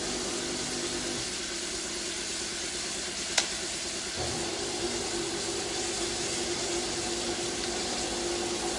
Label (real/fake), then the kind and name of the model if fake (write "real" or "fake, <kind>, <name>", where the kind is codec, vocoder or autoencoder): real